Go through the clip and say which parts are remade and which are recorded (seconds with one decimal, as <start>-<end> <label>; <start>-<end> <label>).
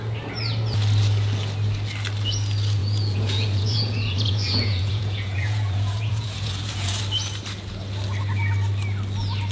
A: 0.0-2.8 recorded; 2.8-7.0 remade; 7.0-9.5 recorded